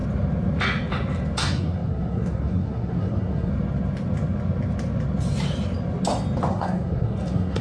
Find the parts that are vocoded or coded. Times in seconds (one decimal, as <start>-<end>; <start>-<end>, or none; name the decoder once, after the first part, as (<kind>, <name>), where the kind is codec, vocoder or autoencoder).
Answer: 1.4-3.5 (codec, SNAC); 6.5-7.6

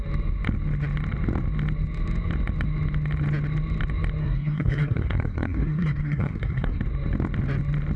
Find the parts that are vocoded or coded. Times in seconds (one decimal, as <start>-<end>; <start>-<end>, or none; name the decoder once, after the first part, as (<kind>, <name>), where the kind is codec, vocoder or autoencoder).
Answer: 4.2-6.8 (codec, SNAC)

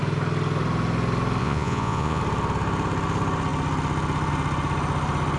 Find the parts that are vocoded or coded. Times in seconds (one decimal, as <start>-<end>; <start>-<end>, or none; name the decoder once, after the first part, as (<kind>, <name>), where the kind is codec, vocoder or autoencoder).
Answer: 1.4-2.2 (vocoder, Vocos)

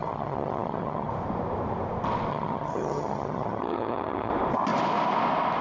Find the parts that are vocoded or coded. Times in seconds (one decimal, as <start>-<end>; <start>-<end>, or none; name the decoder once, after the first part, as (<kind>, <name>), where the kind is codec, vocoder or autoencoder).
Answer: 0.0-1.1 (vocoder, HiFi-GAN); 2.3-4.3